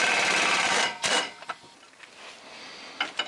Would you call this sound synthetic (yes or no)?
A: no